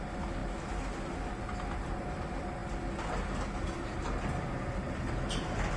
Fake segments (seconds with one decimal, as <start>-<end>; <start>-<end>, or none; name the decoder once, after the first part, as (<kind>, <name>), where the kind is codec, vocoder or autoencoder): none